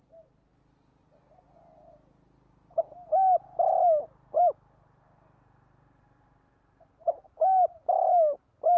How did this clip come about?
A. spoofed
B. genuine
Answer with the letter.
B